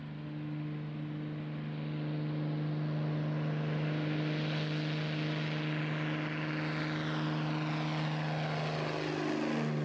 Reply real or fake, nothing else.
real